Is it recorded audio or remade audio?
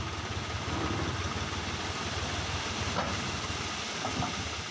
recorded